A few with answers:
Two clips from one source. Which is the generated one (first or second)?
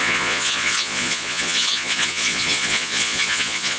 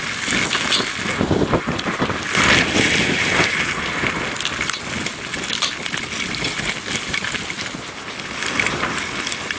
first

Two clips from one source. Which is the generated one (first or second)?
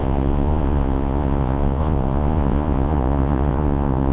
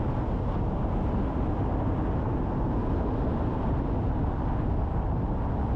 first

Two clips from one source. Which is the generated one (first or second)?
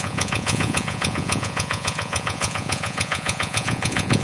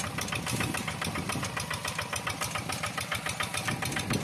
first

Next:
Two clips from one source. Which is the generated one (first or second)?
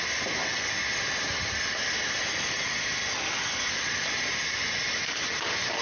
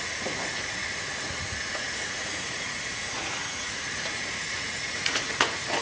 second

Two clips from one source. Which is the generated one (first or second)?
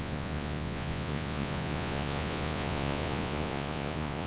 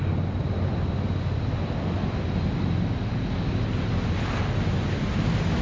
first